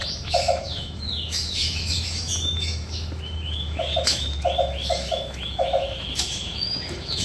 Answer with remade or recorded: remade